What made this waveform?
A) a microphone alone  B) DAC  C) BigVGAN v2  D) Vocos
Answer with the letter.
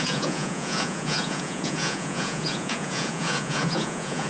D